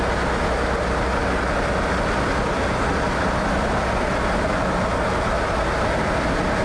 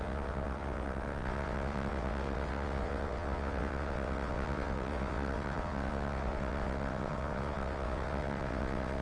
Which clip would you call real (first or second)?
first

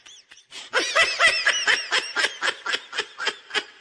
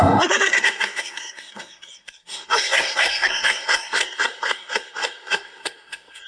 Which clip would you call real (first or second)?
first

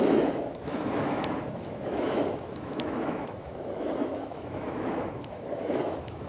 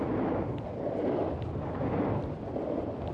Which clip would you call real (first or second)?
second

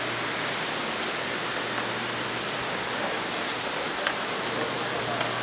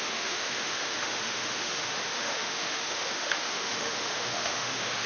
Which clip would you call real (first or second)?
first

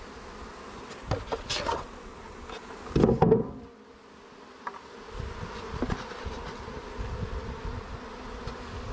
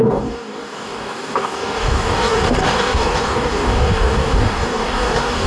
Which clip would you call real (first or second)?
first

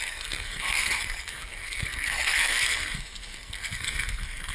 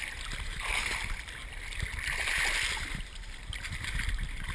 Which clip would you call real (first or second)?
second